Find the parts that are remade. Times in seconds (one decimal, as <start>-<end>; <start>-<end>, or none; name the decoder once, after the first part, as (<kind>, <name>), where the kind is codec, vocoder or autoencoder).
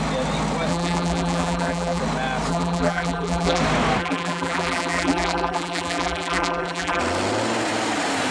0.7-2.0 (vocoder, BigVGAN v2); 2.5-3.6; 4.0-7.0